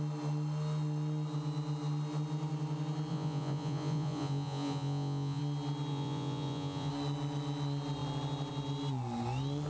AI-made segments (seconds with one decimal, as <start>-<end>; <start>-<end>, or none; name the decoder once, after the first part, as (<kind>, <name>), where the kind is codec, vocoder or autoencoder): 3.1-5.4 (vocoder, Vocos); 5.9-6.9